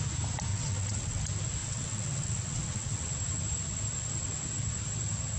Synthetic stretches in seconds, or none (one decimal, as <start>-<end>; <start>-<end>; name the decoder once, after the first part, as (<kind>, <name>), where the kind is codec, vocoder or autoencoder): 0.5-1.2 (vocoder, WaveNeXt); 1.6-3.1